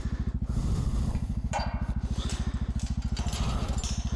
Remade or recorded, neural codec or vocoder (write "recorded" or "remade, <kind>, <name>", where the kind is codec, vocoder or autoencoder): recorded